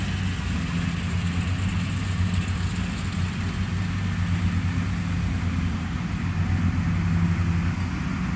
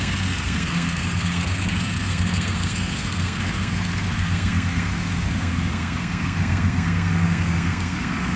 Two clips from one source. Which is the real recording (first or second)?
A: first